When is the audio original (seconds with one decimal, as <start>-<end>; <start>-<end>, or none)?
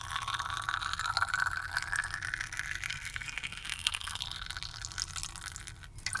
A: 0.0-2.9; 4.2-6.2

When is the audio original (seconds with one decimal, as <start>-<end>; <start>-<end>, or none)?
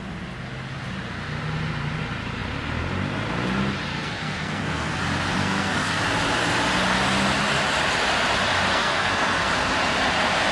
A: 0.0-3.9; 5.0-5.4; 6.0-8.7; 9.5-10.5